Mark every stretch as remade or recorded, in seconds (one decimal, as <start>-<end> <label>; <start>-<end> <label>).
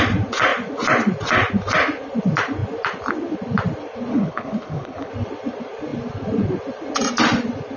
0.0-4.1 recorded; 4.1-5.1 remade; 5.1-7.8 recorded